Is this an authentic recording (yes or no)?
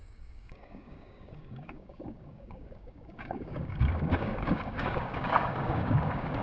no